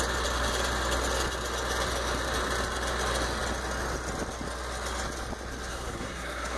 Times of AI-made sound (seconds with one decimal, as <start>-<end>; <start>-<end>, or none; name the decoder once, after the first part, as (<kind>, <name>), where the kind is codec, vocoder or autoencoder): 5.7-6.6 (codec, SNAC)